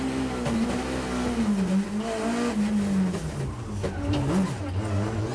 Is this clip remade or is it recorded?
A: recorded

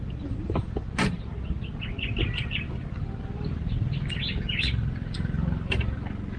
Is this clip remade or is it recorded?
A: recorded